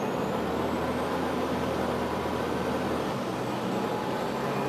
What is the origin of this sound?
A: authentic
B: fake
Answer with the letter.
A